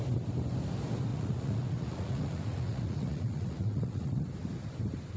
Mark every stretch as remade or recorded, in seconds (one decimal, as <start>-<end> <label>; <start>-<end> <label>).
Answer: 0.0-1.1 recorded; 1.1-4.2 remade; 4.2-5.2 recorded